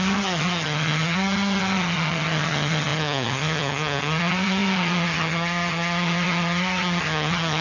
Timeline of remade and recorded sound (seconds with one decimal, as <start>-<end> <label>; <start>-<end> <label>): 0.0-7.6 remade